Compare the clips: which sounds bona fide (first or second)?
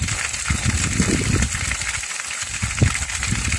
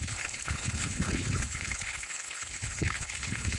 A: first